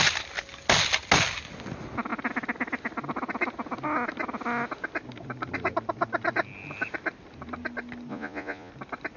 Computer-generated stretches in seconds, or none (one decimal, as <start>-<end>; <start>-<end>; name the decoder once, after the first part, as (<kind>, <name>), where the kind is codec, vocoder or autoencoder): 8.1-8.7 (vocoder, Vocos)